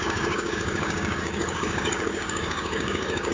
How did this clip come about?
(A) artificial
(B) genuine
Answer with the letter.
A